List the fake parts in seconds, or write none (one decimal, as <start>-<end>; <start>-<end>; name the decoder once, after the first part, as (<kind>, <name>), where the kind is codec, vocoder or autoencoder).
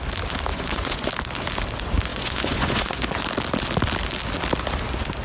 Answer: 0.5-1.1 (vocoder, Vocos); 2.1-3.2